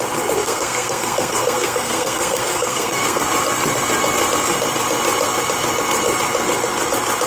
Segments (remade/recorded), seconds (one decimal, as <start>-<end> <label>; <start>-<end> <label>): 0.0-0.4 recorded; 0.4-3.2 remade; 3.2-7.3 recorded